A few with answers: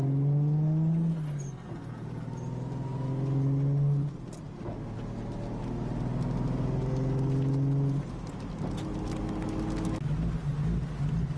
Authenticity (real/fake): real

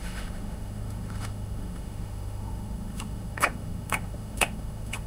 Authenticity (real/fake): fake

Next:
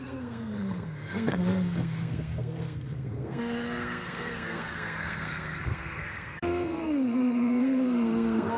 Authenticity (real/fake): fake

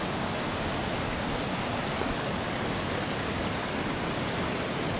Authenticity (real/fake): real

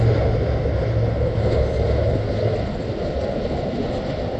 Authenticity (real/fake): real